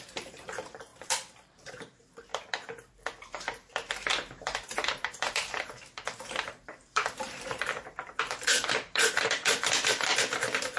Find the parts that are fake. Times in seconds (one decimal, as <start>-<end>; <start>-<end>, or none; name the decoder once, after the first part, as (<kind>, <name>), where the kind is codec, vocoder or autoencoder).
0.0-2.3 (vocoder, BigVGAN v2); 3.7-10.8